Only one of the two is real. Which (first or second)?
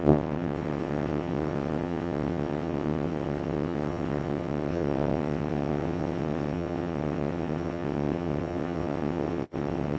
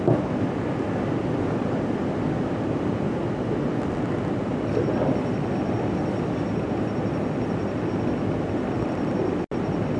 second